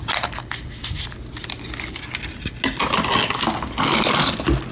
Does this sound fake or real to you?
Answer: real